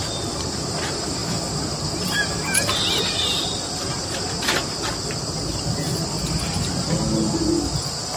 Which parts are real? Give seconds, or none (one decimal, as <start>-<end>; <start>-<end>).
0.0-8.2